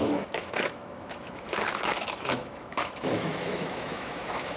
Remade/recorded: remade